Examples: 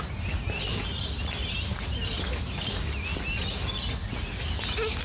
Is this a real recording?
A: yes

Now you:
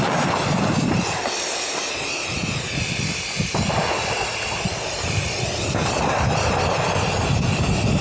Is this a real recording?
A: yes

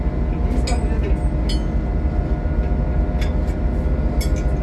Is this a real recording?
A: yes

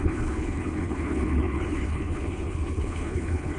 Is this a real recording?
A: no